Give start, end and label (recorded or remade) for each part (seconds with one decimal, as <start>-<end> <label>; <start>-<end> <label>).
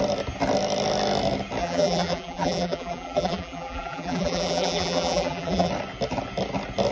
0.0-1.6 recorded; 1.6-5.7 remade; 5.7-6.9 recorded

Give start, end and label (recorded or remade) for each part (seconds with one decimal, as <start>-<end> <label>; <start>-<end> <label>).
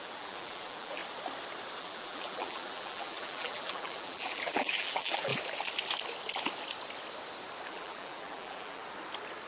0.0-1.0 remade; 1.0-1.8 recorded; 1.8-5.3 remade; 5.3-7.7 recorded; 7.7-8.8 remade; 8.8-9.5 recorded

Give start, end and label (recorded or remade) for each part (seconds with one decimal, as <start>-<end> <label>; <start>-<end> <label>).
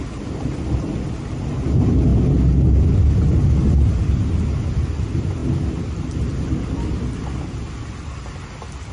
0.0-8.9 recorded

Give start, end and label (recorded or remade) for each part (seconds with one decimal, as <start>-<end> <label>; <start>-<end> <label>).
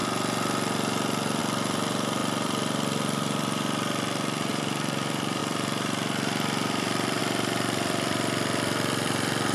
0.0-1.4 recorded; 1.4-9.5 remade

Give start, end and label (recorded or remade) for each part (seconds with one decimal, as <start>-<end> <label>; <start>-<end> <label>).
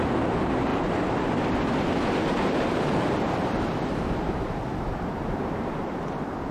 0.0-2.2 recorded; 2.2-4.6 remade; 4.6-6.5 recorded